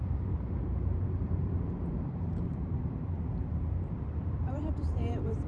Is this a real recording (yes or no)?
no